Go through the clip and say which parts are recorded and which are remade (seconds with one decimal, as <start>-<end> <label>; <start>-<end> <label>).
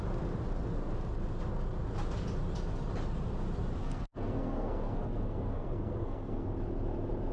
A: 0.0-3.8 recorded; 3.8-6.5 remade; 6.5-7.3 recorded